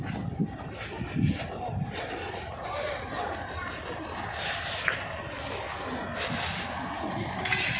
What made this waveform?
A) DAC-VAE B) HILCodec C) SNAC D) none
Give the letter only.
D